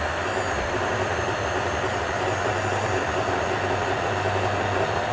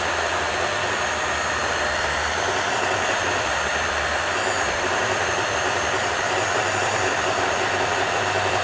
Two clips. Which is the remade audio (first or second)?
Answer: second